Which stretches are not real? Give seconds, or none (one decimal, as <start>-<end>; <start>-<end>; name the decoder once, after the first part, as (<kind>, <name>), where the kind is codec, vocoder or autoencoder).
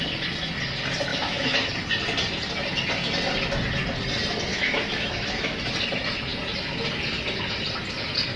1.1-1.7 (autoencoder, DAC-VAE); 4.5-5.6